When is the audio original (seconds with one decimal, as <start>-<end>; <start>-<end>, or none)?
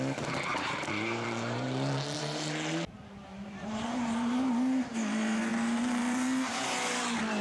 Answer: 0.0-0.5; 4.9-5.5; 6.5-7.4